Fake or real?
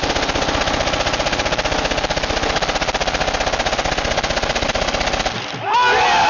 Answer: real